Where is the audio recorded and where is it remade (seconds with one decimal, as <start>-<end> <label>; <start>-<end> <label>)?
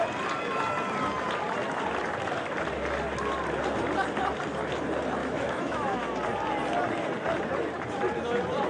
0.0-5.2 recorded; 5.2-6.0 remade; 6.0-8.7 recorded